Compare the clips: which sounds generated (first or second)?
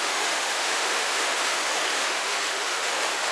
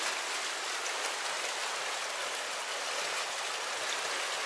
first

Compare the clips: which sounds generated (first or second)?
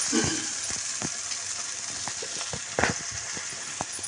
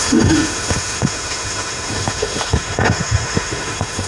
second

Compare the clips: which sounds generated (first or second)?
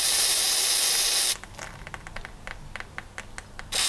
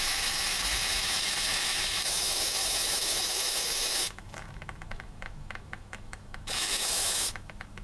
second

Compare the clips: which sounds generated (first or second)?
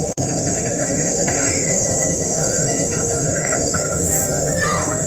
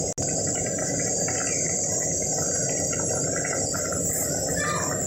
first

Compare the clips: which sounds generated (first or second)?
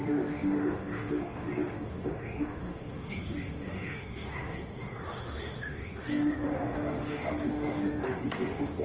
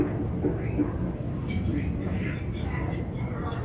first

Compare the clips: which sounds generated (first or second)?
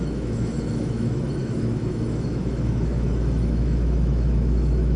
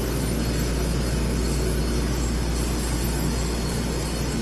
first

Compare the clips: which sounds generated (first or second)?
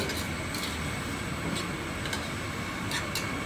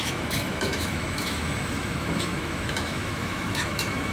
second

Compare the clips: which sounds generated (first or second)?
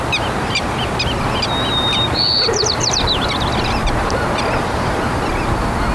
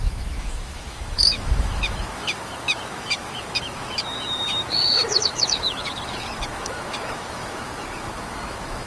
second